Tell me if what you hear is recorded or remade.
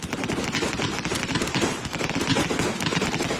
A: remade